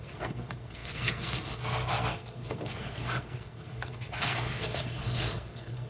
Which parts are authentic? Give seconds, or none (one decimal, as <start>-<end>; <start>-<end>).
none

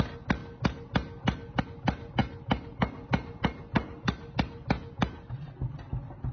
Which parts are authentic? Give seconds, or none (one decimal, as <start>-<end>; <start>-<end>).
0.0-6.3

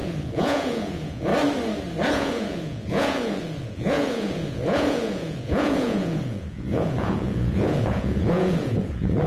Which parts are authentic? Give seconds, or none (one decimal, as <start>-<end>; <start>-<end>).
1.3-2.1

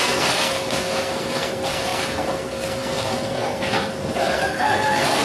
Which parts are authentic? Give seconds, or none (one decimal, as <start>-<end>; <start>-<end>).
none

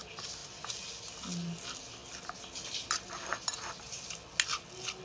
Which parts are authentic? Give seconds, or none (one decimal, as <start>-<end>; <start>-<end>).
0.0-5.0

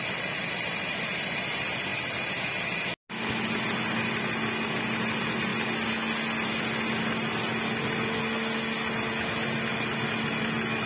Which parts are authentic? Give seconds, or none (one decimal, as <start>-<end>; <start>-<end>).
0.0-10.9

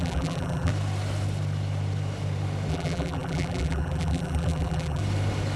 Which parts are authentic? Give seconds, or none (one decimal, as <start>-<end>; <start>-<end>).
0.7-2.7; 5.0-5.6